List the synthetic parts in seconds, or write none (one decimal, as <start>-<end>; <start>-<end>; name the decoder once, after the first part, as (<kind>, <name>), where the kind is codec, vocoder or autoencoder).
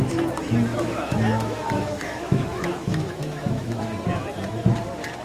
0.7-3.8 (autoencoder, DAC-VAE)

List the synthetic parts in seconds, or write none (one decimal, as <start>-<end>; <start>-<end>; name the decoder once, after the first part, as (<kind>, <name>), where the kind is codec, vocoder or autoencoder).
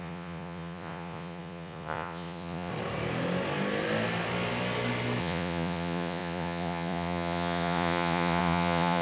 0.0-2.7 (vocoder, Vocos); 5.2-9.0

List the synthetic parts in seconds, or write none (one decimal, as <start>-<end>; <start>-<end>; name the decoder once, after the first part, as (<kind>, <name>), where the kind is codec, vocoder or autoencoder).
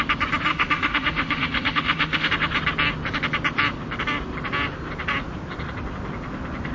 0.5-2.3 (autoencoder, DAC-VAE)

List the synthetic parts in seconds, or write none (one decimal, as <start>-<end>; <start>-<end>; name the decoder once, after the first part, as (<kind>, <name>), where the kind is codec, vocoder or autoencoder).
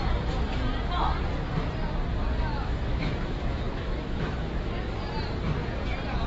2.5-4.7 (autoencoder, DAC-VAE)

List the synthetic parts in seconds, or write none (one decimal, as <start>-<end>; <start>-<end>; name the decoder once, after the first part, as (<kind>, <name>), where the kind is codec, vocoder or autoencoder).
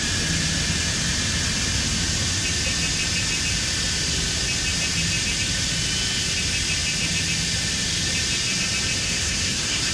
9.0-9.9 (codec, SNAC)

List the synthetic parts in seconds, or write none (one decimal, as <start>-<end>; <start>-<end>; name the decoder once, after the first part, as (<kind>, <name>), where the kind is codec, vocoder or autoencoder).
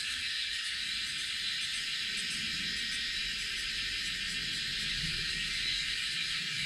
0.0-0.9 (codec, DAC); 4.9-6.7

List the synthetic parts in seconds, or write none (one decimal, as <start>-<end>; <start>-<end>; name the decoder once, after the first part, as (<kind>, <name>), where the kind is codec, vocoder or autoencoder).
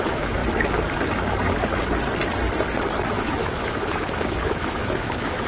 0.0-0.4 (autoencoder, DAC-VAE); 3.1-5.5